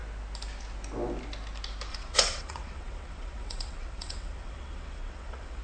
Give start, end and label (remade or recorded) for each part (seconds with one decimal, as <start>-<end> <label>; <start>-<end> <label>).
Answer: 0.0-1.9 recorded; 1.9-5.6 remade